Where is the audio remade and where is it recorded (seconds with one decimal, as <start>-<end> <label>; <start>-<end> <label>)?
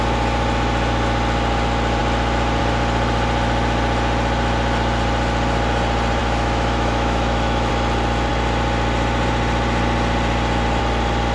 0.0-6.2 recorded; 6.2-7.7 remade; 7.7-11.3 recorded